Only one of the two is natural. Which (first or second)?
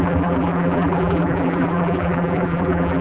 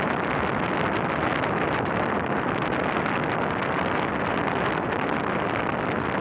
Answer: second